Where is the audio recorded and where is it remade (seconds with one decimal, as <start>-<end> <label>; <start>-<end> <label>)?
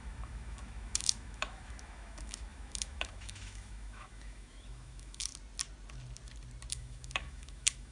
0.0-5.3 remade; 5.3-6.7 recorded; 6.7-7.9 remade